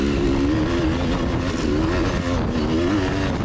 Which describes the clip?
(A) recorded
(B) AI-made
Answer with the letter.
A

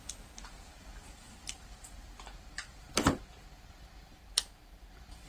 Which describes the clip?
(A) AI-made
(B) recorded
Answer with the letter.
B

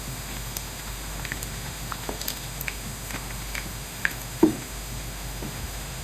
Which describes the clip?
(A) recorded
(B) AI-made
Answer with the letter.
B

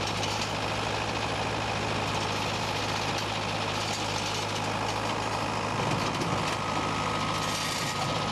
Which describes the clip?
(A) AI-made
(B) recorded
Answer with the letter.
B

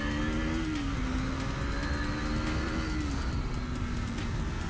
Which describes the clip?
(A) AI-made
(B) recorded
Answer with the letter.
B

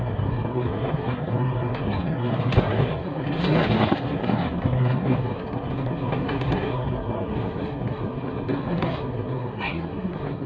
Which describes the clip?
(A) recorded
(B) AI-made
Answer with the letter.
B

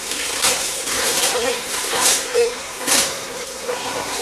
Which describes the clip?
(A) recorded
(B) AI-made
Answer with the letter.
B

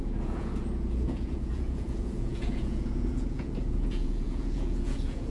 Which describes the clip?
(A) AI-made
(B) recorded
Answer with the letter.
A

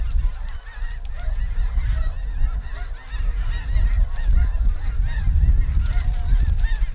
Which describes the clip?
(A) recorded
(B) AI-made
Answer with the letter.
A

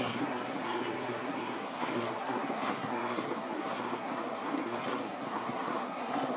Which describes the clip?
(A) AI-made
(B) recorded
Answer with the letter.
A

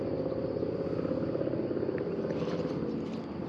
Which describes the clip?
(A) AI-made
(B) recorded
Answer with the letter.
B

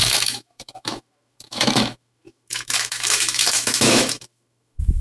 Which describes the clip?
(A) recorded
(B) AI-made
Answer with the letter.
B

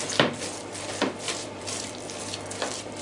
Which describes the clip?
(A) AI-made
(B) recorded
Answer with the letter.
A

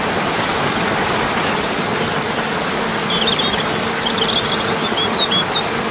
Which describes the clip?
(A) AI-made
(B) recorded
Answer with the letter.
B